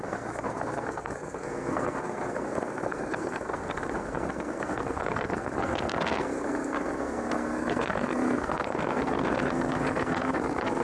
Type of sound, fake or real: fake